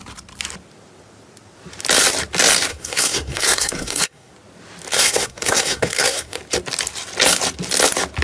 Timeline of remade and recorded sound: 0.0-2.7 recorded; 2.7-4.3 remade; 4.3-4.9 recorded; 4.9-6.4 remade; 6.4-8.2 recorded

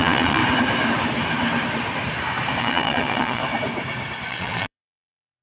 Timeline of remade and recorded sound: 0.0-0.4 remade; 0.4-2.6 recorded; 2.6-3.4 remade; 3.4-4.3 recorded; 4.3-5.4 remade

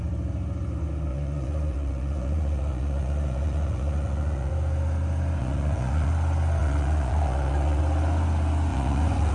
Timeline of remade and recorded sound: 0.0-1.1 recorded; 1.1-4.5 remade; 4.5-5.4 recorded; 5.4-6.1 remade; 6.1-6.6 recorded; 6.6-7.8 remade; 7.8-8.7 recorded; 8.7-9.3 remade

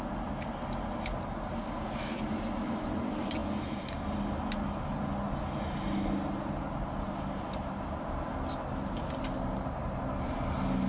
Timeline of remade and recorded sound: 0.0-10.9 recorded

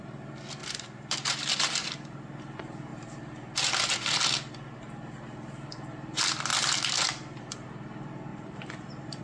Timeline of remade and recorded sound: 0.0-0.6 recorded; 0.6-1.5 remade; 1.5-8.3 recorded; 8.3-9.2 remade

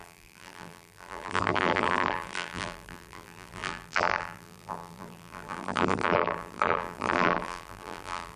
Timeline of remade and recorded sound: 0.0-8.4 remade

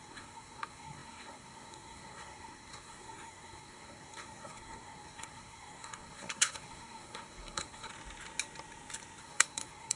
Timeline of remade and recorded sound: 0.0-7.9 remade; 7.9-9.2 recorded; 9.2-10.0 remade